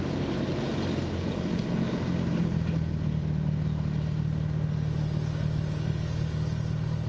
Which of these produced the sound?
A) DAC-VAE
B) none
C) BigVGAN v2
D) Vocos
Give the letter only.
B